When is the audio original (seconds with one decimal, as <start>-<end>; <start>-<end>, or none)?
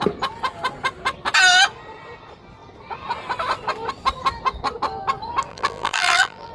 0.0-5.5